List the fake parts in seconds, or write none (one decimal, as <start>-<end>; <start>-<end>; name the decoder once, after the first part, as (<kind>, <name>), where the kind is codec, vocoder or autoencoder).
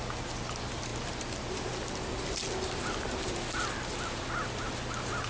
none